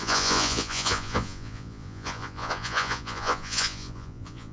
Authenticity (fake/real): fake